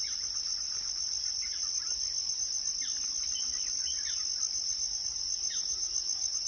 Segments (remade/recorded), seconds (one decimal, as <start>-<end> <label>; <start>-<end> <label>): 0.0-6.5 recorded